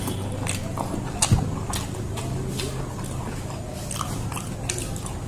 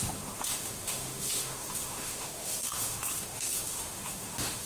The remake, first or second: second